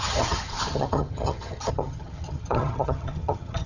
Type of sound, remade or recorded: remade